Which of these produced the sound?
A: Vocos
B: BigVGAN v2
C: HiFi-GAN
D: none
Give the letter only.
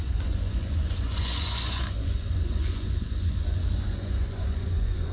A